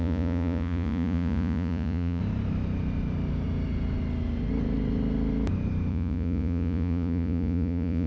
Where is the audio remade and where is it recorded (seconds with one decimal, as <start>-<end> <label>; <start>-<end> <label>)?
0.0-2.2 remade; 2.2-5.9 recorded; 5.9-8.1 remade